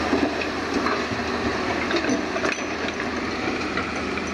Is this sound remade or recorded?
recorded